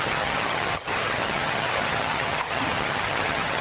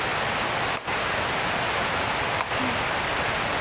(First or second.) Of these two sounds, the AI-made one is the first